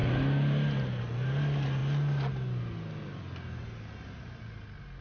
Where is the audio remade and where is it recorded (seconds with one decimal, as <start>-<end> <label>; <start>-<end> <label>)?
0.0-5.0 recorded